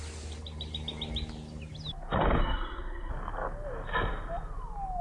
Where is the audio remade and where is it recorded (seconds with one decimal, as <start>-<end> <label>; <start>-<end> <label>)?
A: 0.0-2.4 recorded; 2.4-3.1 remade; 3.1-5.0 recorded